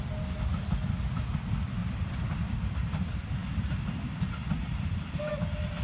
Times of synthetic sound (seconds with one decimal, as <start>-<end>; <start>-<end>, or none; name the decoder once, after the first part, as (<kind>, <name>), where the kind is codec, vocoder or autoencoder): 1.8-5.3 (vocoder, BigVGAN v2)